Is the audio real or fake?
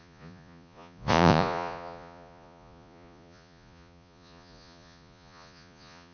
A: fake